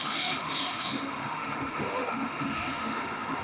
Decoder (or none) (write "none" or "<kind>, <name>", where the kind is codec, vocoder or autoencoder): autoencoder, DAC-VAE